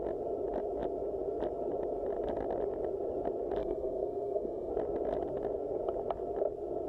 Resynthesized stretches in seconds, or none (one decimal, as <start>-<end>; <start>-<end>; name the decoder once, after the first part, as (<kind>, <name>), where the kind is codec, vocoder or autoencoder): 3.6-4.7 (codec, SNAC)